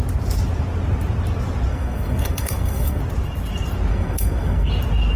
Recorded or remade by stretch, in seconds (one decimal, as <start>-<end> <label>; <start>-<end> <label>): 0.0-1.7 recorded; 1.7-3.0 remade; 3.0-3.9 recorded; 3.9-4.7 remade; 4.7-5.2 recorded